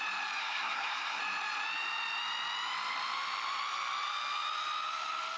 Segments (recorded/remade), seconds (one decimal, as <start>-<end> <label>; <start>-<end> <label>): 0.0-0.4 recorded; 0.4-1.2 remade; 1.2-5.4 recorded